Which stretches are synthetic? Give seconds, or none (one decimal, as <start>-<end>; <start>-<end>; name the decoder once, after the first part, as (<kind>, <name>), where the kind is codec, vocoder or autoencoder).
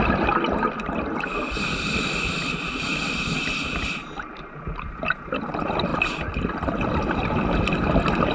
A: none